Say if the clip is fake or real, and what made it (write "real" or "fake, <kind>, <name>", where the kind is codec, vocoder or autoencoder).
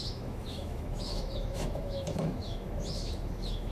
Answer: fake, autoencoder, DAC-VAE